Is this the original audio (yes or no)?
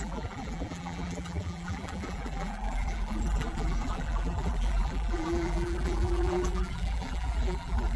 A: no